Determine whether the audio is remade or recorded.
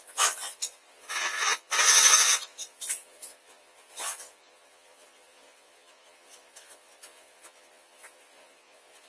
remade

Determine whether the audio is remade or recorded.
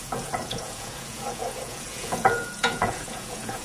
remade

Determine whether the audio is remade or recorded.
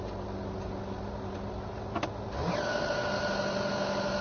recorded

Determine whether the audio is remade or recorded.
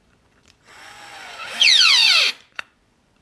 remade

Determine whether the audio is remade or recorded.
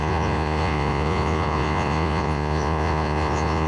remade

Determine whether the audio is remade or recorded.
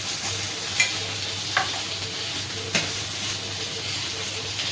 recorded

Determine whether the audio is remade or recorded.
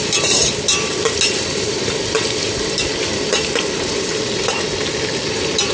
recorded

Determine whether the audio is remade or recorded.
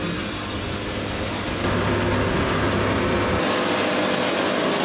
recorded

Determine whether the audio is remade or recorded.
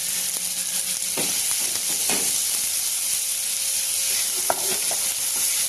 recorded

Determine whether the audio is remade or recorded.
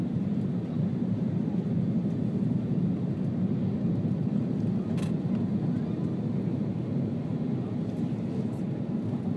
recorded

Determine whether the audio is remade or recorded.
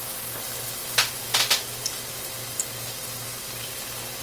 recorded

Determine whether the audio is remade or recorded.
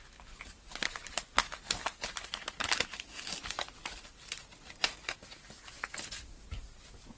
recorded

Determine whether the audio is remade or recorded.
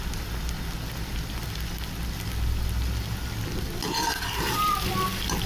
recorded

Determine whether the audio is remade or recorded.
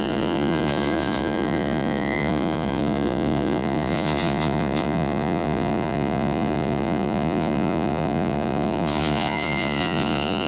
remade